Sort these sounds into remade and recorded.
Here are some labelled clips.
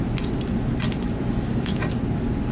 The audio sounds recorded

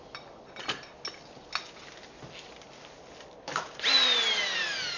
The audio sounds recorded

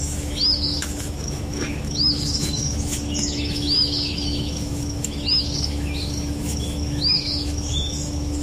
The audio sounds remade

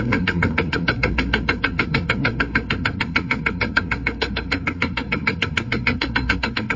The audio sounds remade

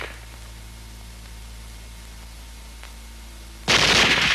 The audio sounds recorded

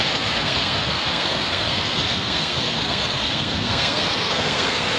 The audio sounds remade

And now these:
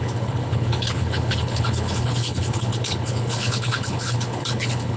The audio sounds remade